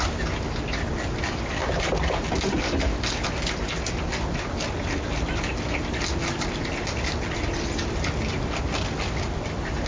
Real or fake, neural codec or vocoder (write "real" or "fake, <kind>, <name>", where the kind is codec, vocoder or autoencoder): real